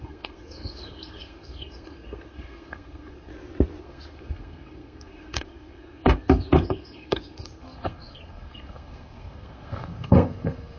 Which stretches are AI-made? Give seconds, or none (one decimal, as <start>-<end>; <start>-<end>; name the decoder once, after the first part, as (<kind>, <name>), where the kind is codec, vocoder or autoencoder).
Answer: 0.0-3.3 (codec, SNAC); 3.8-10.8